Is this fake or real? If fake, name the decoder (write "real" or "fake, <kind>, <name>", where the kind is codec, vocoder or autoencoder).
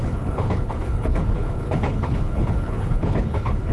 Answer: fake, codec, HILCodec